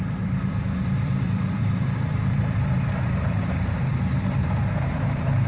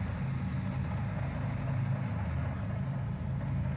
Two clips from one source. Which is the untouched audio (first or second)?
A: second